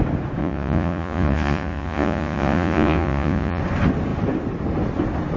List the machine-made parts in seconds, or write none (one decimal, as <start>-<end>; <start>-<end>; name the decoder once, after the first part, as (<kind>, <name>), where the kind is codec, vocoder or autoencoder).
0.4-3.6 (vocoder, Vocos)